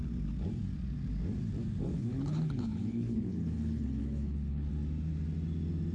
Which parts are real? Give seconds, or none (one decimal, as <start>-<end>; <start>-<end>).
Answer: 0.0-1.9; 4.7-5.9